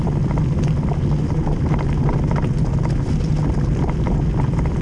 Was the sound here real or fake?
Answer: real